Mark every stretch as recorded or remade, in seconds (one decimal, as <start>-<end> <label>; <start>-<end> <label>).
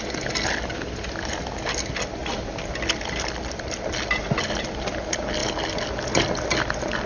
0.0-7.1 recorded